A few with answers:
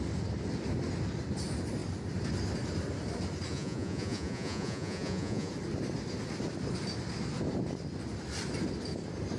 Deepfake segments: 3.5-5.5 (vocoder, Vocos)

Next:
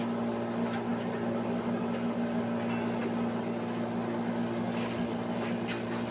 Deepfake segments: none

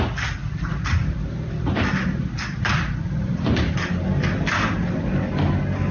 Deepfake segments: 0.4-3.9 (vocoder, BigVGAN v2)